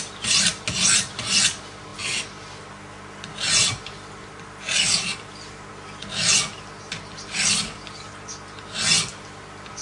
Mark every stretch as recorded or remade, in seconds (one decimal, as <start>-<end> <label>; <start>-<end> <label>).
0.0-9.8 recorded

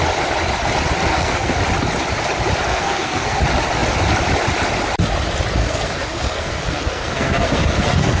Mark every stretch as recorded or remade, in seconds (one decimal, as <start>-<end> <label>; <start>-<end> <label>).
0.0-1.1 recorded; 1.1-1.6 remade; 1.6-2.7 recorded; 2.7-3.4 remade; 3.4-5.6 recorded; 5.6-8.2 remade

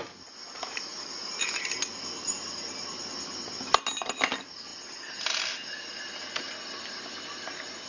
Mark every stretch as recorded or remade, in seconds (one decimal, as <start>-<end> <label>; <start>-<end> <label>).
0.0-7.9 recorded

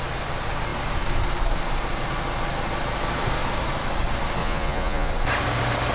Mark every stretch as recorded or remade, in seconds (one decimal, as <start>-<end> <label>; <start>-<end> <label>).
0.0-4.4 recorded; 4.4-5.1 remade; 5.1-5.9 recorded

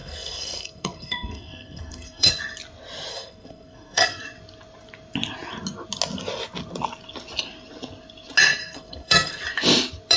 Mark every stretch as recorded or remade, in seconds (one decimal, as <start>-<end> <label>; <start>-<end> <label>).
0.0-2.3 remade; 2.3-3.1 recorded; 3.1-4.2 remade; 4.2-8.6 recorded; 8.6-9.4 remade; 9.4-10.2 recorded

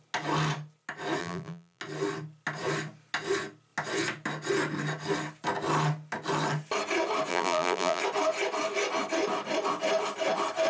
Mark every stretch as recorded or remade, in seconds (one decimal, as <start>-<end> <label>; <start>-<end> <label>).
0.0-1.2 recorded; 1.2-1.8 remade; 1.8-7.3 recorded; 7.3-8.0 remade; 8.0-10.7 recorded

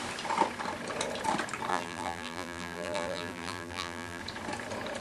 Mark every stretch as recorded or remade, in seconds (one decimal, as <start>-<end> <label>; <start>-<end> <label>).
0.0-1.7 recorded; 1.7-4.2 remade; 4.2-5.0 recorded

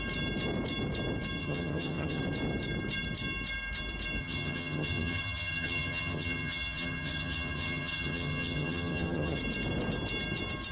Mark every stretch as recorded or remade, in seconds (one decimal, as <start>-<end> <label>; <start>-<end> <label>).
0.0-1.4 recorded; 1.4-2.2 remade; 2.2-4.2 recorded; 4.2-9.4 remade; 9.4-10.7 recorded